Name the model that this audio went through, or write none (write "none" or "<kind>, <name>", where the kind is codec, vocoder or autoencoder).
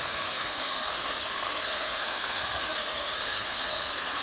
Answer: codec, SNAC